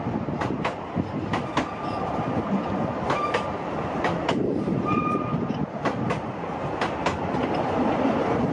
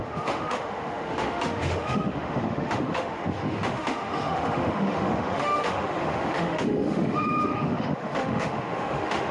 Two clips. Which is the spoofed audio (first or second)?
second